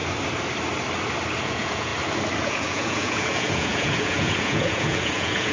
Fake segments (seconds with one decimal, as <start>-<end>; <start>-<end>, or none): 1.4-1.9; 2.4-5.5